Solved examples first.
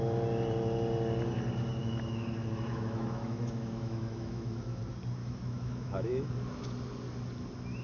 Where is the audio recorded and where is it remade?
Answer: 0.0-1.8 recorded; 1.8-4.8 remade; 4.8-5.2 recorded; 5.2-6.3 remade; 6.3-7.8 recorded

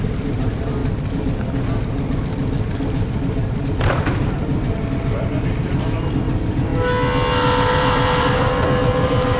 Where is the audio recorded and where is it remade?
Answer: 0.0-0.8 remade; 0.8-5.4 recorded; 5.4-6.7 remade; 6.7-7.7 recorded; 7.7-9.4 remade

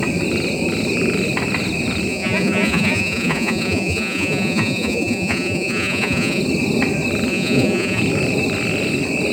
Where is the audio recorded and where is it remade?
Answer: 0.0-2.1 recorded; 2.1-6.4 remade; 6.4-7.3 recorded; 7.3-8.0 remade; 8.0-9.3 recorded

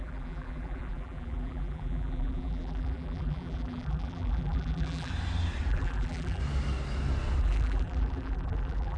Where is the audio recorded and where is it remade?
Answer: 0.0-5.1 remade; 5.1-5.7 recorded; 5.7-6.4 remade; 6.4-7.4 recorded; 7.4-9.0 remade

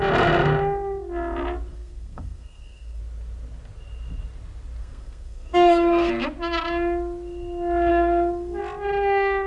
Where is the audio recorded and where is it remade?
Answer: 0.0-1.7 recorded; 1.7-3.0 remade; 3.0-4.8 recorded; 4.8-6.1 remade; 6.1-7.9 recorded; 7.9-8.6 remade; 8.6-9.5 recorded

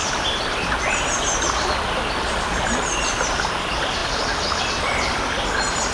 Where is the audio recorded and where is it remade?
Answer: 0.0-1.0 recorded; 1.0-5.9 remade